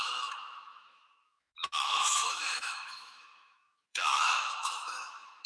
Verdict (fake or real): fake